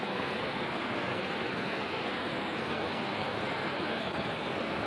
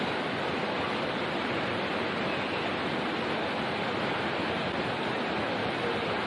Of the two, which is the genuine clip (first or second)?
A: second